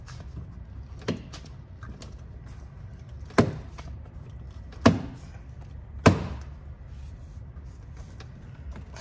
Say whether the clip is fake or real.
real